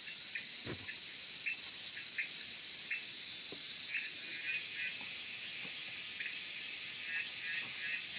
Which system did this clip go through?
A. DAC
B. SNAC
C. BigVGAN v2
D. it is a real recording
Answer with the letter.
D